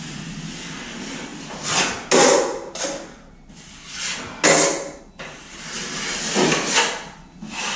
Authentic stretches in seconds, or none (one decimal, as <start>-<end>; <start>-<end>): 0.0-7.8